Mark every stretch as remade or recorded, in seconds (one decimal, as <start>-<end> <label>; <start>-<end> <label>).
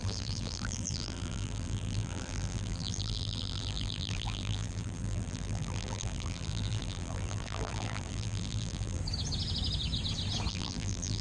0.0-9.0 remade; 9.0-10.5 recorded; 10.5-11.2 remade